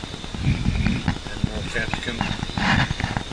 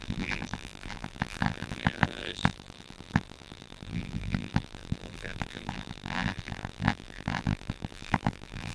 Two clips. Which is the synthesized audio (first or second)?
second